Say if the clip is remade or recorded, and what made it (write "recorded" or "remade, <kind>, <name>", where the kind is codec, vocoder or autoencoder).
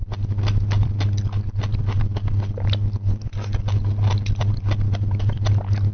recorded